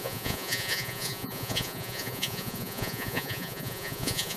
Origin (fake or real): fake